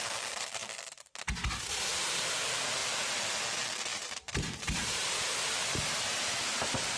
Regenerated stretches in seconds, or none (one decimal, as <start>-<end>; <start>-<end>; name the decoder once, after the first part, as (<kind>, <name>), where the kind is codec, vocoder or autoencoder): 3.9-7.0 (vocoder, BigVGAN v2)